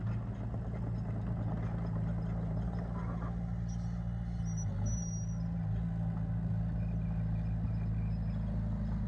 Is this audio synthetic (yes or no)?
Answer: no